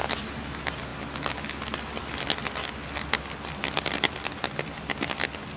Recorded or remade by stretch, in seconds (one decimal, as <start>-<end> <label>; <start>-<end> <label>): 0.0-5.6 recorded